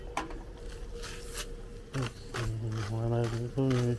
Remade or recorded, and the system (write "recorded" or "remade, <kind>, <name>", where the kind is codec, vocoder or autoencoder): recorded